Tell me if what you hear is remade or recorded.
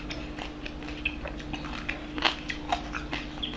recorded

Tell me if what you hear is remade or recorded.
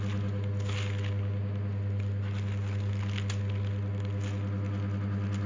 recorded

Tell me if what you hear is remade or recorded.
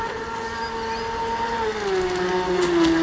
recorded